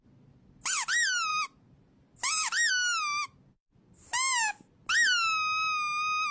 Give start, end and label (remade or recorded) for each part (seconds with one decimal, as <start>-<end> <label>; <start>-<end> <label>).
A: 0.0-6.3 recorded